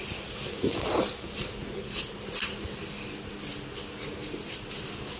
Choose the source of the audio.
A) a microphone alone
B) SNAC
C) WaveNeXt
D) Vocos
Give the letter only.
A